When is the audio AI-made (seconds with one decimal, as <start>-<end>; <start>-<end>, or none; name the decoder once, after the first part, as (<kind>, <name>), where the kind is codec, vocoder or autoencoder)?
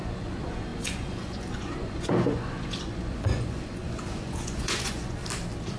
0.0-5.2 (vocoder, Vocos)